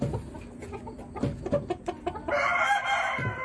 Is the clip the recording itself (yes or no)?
yes